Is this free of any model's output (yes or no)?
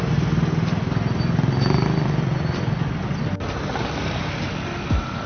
yes